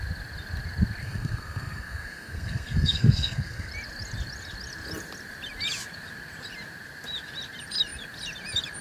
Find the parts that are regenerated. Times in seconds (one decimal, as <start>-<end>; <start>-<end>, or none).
1.0-3.7